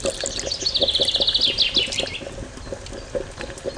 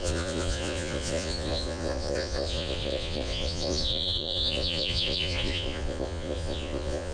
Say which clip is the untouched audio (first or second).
first